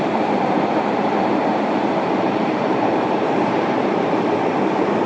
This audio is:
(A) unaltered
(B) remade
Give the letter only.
B